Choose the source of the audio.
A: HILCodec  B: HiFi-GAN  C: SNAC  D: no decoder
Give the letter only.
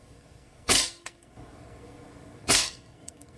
C